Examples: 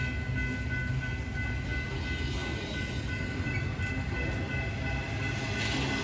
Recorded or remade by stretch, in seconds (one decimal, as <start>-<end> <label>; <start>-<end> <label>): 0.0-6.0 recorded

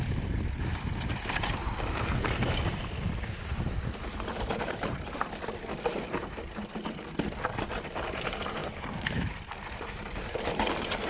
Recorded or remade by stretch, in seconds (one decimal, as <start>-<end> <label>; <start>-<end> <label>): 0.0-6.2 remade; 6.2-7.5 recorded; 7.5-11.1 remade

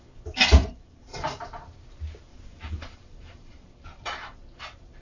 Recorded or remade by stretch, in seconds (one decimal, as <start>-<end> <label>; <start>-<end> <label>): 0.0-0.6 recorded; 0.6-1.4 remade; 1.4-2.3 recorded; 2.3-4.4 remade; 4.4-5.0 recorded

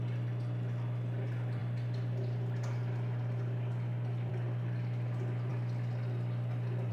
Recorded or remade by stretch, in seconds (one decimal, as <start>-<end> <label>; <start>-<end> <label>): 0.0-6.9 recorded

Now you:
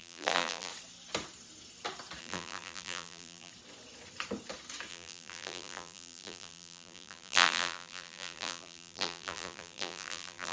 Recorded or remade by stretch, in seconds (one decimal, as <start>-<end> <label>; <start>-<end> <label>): 0.0-0.7 remade; 0.7-2.2 recorded; 2.2-3.5 remade; 3.5-4.9 recorded; 4.9-10.5 remade